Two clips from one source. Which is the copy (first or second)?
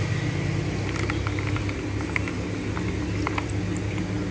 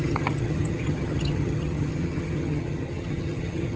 second